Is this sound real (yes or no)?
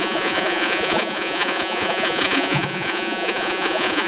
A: no